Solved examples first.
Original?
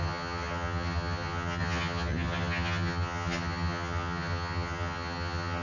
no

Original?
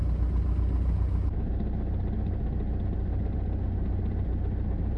yes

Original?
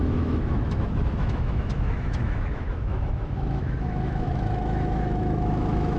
no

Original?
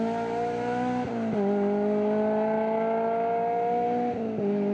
yes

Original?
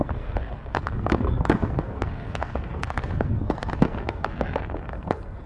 no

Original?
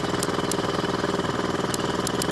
yes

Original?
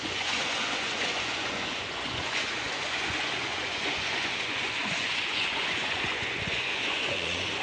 no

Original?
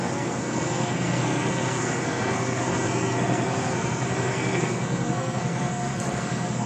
no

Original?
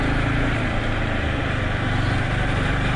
yes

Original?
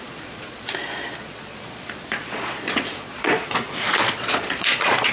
no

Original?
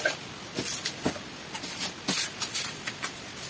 yes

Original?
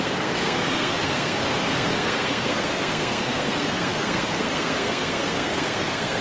no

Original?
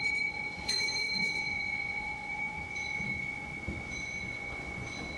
no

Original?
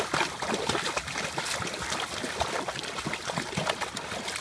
yes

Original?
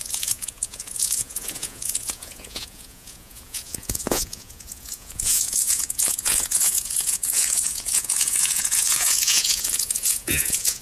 no